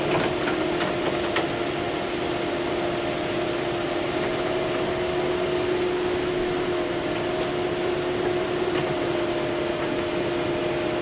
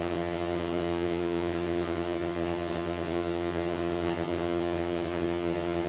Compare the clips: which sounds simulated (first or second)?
second